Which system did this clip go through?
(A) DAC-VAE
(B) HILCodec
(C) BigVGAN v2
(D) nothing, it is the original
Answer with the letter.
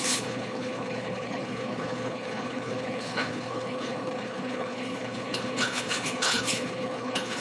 B